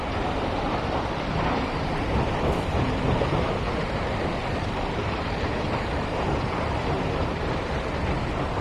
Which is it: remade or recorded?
remade